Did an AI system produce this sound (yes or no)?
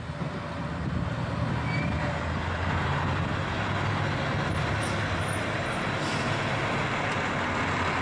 no